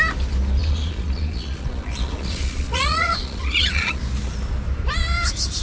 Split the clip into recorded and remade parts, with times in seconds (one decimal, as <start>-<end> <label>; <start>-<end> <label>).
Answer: 0.0-0.6 recorded; 0.6-4.0 remade; 4.0-5.6 recorded